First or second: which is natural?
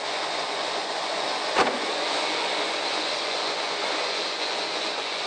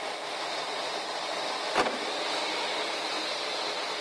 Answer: second